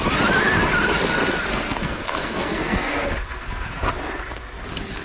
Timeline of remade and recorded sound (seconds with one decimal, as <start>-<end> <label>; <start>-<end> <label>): 0.0-1.5 recorded; 1.5-3.9 remade; 3.9-5.0 recorded